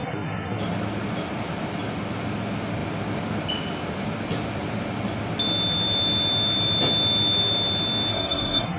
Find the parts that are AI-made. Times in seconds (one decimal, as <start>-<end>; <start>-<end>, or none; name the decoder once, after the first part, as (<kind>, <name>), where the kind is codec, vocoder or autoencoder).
0.0-0.6 (codec, SNAC); 8.1-8.8